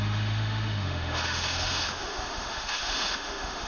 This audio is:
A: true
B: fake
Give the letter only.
B